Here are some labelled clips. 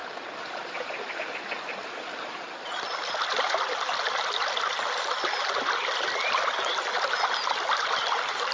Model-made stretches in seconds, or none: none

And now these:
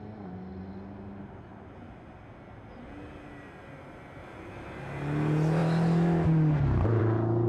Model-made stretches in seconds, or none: none